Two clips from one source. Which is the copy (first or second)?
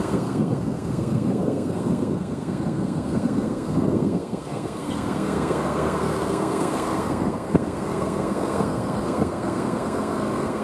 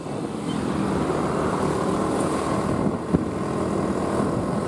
first